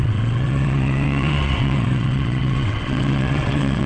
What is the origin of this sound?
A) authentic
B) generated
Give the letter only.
B